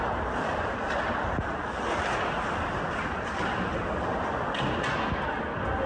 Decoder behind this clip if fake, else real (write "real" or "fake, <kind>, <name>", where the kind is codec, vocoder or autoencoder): real